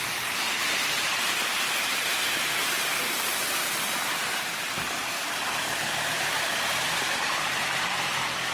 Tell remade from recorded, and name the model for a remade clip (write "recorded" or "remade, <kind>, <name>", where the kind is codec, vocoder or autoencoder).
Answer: remade, vocoder, BigVGAN v2